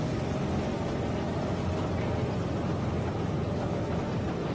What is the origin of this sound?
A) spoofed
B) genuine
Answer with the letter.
B